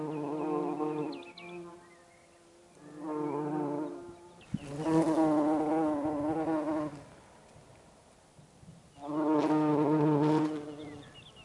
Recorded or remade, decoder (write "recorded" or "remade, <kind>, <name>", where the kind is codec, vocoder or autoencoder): recorded